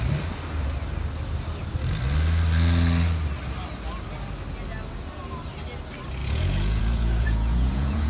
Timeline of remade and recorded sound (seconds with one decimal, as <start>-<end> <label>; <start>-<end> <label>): 0.0-6.2 recorded; 6.2-8.1 remade